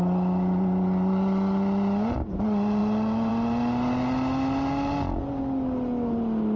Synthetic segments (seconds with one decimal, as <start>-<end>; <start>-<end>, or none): none